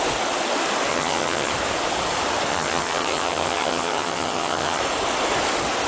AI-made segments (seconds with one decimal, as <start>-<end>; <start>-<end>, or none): 0.9-1.5; 2.5-4.8